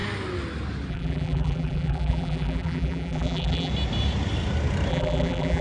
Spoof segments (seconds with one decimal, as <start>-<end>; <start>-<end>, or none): 0.9-3.7; 4.9-5.6